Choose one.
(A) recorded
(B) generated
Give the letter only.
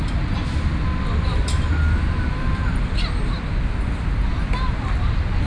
A